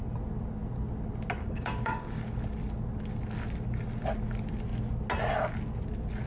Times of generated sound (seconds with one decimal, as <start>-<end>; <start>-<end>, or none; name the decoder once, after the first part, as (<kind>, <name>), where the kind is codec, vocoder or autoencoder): 1.4-2.2 (codec, DAC)